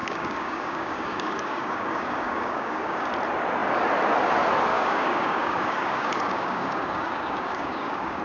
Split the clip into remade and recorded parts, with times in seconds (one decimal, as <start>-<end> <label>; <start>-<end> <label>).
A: 0.0-3.1 remade; 3.1-4.7 recorded; 4.7-8.2 remade

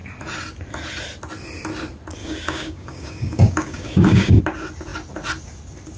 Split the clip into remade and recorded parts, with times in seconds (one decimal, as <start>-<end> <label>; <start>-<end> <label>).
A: 0.0-2.2 recorded; 2.2-4.4 remade; 4.4-6.0 recorded